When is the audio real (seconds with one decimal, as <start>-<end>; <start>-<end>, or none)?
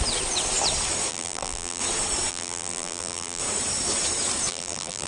0.0-1.1; 1.8-2.3; 3.4-4.5